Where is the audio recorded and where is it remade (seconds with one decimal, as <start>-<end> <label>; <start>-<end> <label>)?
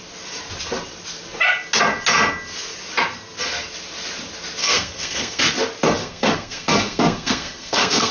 0.0-4.6 recorded; 4.6-5.4 remade; 5.4-6.0 recorded; 6.0-8.1 remade